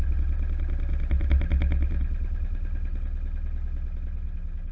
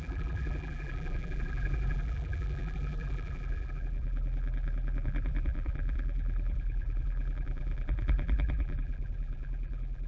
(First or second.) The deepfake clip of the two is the second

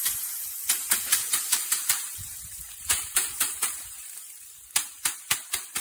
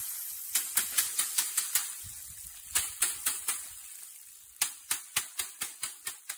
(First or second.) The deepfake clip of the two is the first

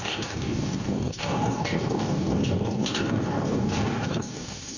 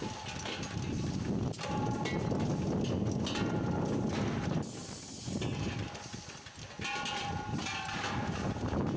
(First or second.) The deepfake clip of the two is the first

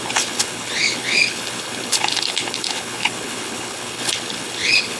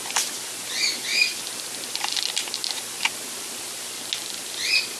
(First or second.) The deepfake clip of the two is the first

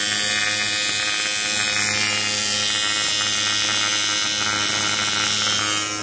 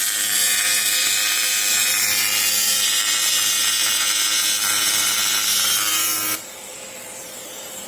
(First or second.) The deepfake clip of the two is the second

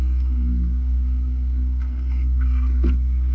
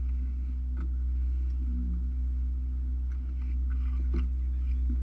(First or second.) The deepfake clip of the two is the first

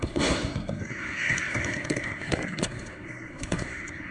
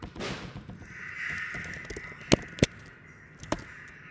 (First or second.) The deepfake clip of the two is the first